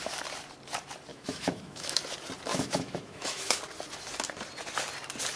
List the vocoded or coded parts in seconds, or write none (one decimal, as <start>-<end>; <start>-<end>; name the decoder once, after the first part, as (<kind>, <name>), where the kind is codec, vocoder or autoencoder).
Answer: 1.1-2.0 (autoencoder, DAC-VAE); 2.5-3.6